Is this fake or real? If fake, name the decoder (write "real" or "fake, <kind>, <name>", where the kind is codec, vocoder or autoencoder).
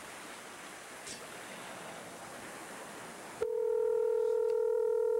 real